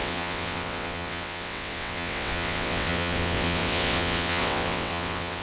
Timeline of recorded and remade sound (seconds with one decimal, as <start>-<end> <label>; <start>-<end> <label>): 0.0-5.4 remade